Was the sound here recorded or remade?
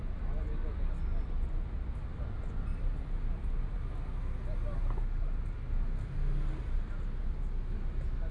recorded